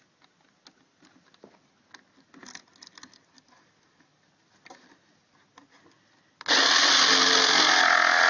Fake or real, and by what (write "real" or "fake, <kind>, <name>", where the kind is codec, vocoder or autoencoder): real